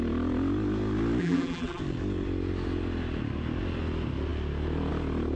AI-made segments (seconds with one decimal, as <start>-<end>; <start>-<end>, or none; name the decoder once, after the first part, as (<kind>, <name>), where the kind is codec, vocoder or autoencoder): 1.2-1.8 (vocoder, BigVGAN v2)

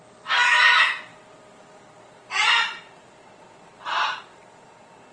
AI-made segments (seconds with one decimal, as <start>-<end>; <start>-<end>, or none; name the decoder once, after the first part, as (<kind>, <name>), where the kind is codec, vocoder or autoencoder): 1.1-4.2 (vocoder, BigVGAN v2)

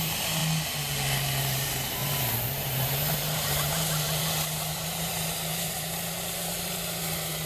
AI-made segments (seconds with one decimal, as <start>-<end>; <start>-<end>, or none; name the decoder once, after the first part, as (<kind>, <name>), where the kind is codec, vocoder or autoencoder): 0.0-0.4 (vocoder, BigVGAN v2); 1.4-7.5

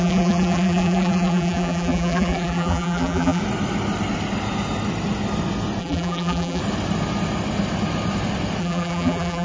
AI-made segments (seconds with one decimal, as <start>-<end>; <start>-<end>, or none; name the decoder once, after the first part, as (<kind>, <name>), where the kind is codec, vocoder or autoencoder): 0.0-3.4 (vocoder, BigVGAN v2); 5.8-6.6; 8.6-9.4

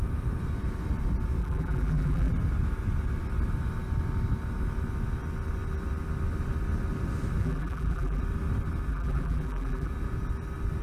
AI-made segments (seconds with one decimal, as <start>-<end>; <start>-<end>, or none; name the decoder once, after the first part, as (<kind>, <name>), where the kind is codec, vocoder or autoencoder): 1.4-2.3 (vocoder, BigVGAN v2); 7.4-8.2; 8.9-9.9